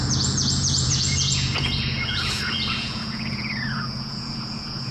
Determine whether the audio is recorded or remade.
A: remade